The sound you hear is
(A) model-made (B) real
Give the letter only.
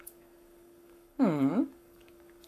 A